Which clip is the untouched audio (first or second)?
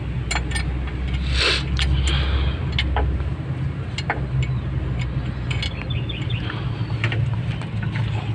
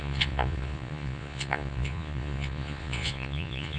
first